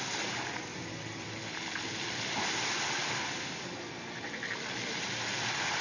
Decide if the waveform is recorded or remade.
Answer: recorded